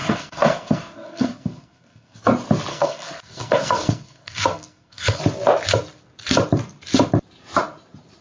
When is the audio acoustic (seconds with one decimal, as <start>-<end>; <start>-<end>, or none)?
2.2-2.7; 5.2-8.2